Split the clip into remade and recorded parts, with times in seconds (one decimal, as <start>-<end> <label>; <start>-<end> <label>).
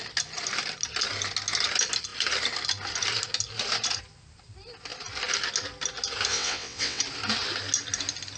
0.0-6.3 recorded; 6.3-7.0 remade; 7.0-8.4 recorded